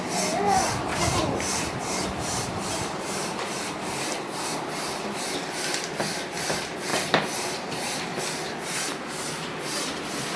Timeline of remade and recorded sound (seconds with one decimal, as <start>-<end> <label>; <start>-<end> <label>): 0.0-0.9 recorded; 0.9-4.2 remade; 4.2-6.9 recorded; 6.9-8.2 remade; 8.2-10.4 recorded